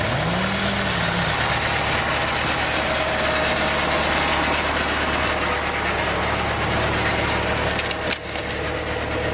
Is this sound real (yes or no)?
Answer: yes